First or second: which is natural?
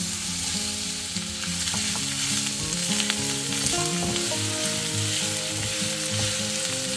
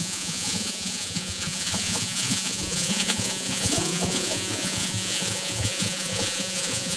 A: first